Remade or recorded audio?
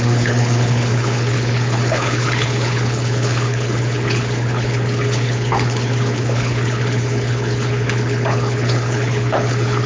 remade